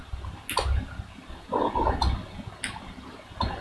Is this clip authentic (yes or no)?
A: yes